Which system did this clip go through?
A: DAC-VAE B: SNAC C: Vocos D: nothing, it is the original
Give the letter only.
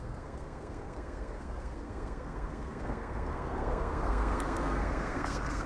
B